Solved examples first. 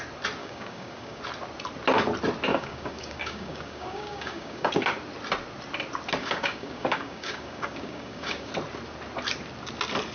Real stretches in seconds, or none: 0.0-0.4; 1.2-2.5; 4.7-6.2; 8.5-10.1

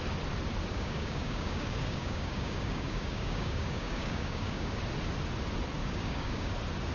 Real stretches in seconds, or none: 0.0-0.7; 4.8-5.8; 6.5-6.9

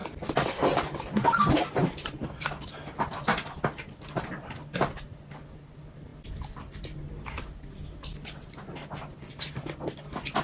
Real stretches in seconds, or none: 0.0-10.4

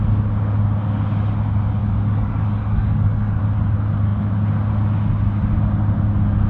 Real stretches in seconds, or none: 0.0-1.8; 3.4-6.5